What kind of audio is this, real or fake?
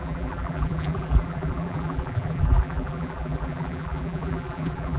fake